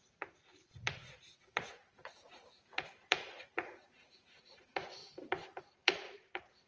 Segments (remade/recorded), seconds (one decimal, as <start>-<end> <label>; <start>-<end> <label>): 0.0-5.0 remade; 5.0-5.6 recorded; 5.6-6.7 remade